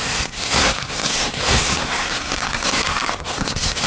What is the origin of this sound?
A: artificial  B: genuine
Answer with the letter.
A